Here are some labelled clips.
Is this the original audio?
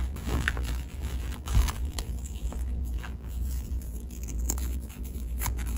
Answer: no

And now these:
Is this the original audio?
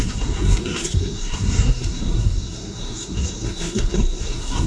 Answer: no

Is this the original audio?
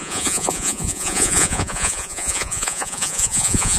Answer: no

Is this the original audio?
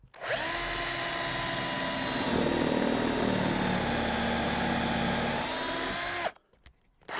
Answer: yes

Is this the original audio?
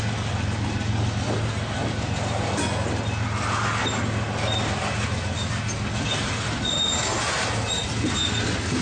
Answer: yes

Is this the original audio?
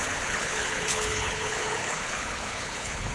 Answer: no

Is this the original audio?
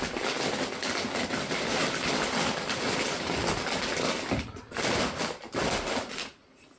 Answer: yes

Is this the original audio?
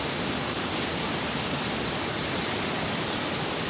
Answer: yes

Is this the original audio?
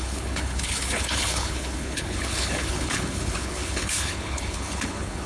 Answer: no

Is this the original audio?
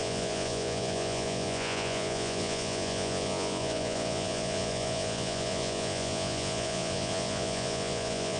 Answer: no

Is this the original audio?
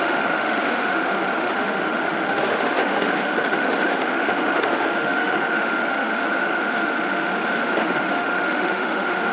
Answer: no